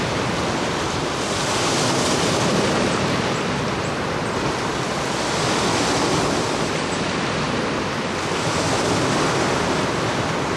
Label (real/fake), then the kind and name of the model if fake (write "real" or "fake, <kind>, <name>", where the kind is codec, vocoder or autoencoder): real